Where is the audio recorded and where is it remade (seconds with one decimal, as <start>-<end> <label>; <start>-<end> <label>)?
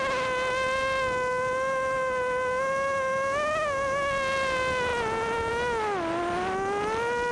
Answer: 0.0-7.3 recorded